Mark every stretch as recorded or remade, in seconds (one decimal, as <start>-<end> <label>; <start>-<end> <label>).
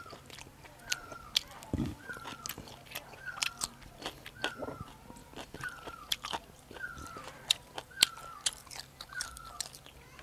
0.0-5.2 recorded; 5.2-9.6 remade; 9.6-10.2 recorded